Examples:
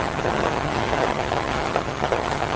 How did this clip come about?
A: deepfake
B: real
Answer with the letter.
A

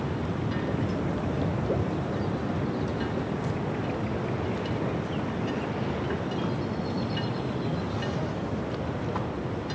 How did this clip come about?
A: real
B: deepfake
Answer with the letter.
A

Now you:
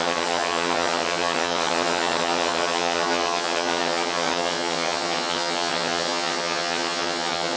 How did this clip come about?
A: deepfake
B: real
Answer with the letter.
A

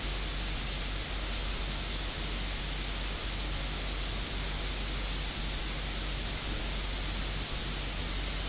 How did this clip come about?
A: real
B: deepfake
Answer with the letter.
A